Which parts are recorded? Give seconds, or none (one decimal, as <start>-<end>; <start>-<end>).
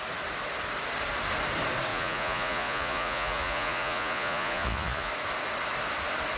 0.0-1.9; 5.1-6.4